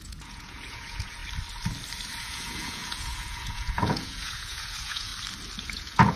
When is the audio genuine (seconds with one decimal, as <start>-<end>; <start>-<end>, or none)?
1.2-2.2; 5.1-5.6